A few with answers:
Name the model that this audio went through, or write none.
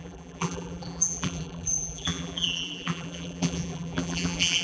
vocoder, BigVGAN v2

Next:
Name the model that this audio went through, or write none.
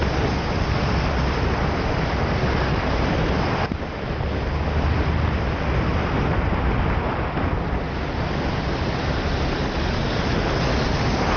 none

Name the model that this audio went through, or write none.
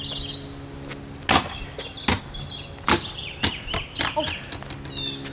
none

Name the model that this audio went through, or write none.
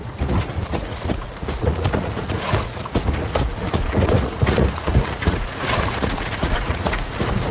vocoder, Vocos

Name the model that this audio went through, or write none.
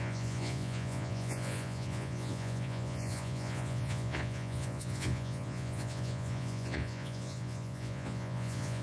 vocoder, Vocos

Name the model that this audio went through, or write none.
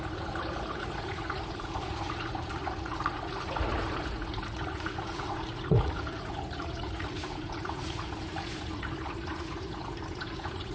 vocoder, Vocos